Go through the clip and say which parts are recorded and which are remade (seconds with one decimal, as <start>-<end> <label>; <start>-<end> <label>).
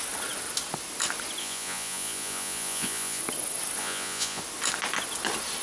0.0-1.4 recorded; 1.4-3.2 remade; 3.2-3.8 recorded; 3.8-4.4 remade; 4.4-5.6 recorded